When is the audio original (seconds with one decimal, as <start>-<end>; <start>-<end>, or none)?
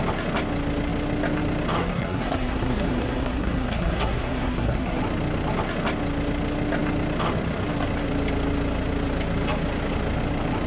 0.0-1.8; 5.0-10.7